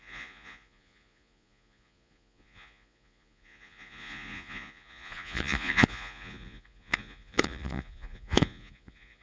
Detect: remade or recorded remade